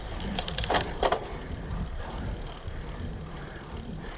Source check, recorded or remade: remade